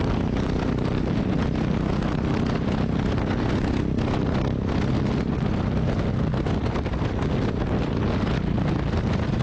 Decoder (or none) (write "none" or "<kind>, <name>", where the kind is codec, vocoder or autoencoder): none